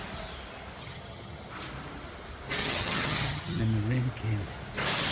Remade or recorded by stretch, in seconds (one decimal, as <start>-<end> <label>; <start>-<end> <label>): 0.0-0.8 recorded; 0.8-1.5 remade; 1.5-2.6 recorded; 2.6-3.6 remade; 3.6-5.1 recorded